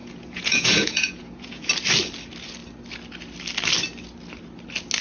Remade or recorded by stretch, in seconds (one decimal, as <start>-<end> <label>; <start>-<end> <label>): 0.0-1.7 remade; 1.7-5.0 recorded

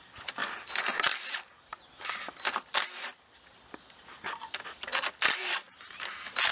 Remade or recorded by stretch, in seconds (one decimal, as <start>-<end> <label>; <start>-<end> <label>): 0.0-0.4 remade; 0.4-3.8 recorded; 3.8-4.9 remade; 4.9-5.9 recorded; 5.9-6.5 remade

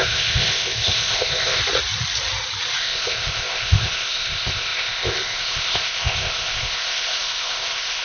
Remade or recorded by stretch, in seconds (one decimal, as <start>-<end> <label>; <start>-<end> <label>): 0.0-1.6 remade; 1.6-2.8 recorded; 2.8-8.0 remade

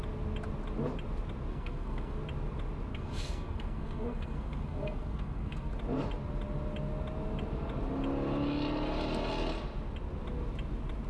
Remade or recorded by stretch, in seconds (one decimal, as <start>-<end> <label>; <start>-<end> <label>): 0.0-1.5 recorded; 1.5-2.2 remade; 2.2-2.9 recorded; 2.9-5.7 remade; 5.7-11.1 recorded

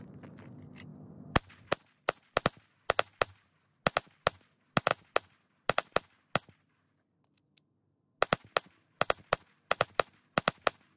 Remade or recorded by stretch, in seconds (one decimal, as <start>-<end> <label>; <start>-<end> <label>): 0.0-11.0 recorded

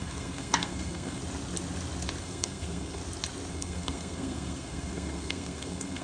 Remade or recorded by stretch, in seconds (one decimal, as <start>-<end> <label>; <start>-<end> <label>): 0.0-1.2 remade; 1.2-2.2 recorded; 2.2-3.0 remade; 3.0-3.5 recorded; 3.5-6.0 remade

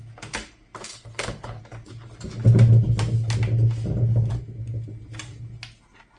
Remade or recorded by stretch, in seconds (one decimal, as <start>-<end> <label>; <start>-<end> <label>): 0.0-0.9 recorded; 0.9-1.6 remade; 1.6-6.2 recorded

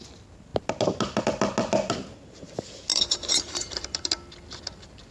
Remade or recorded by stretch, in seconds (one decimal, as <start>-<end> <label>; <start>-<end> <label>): 0.0-2.9 recorded; 2.9-4.1 remade; 4.1-5.1 recorded